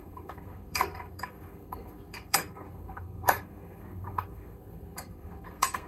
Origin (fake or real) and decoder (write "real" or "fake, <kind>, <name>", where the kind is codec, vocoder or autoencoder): fake, codec, SNAC